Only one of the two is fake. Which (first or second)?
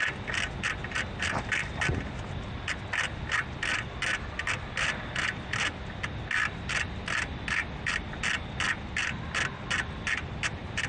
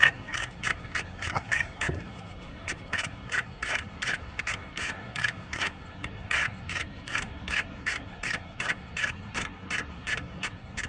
second